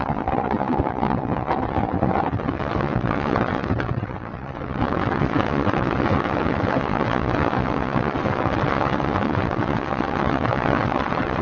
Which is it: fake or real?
fake